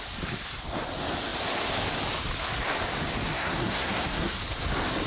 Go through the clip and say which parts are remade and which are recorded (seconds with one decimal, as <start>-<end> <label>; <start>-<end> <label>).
0.0-3.3 recorded; 3.3-4.3 remade; 4.3-5.1 recorded